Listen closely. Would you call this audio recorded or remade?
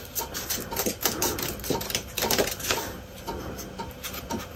recorded